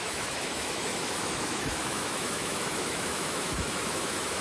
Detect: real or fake fake